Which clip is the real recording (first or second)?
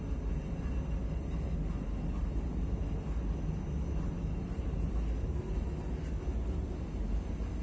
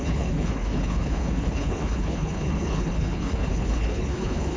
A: first